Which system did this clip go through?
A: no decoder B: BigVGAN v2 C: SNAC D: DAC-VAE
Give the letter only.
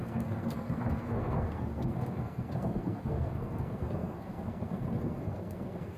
C